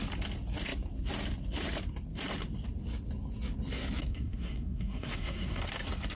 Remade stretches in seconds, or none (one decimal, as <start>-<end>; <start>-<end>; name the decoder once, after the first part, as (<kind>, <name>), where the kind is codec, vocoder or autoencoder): 4.1-5.6 (codec, SNAC)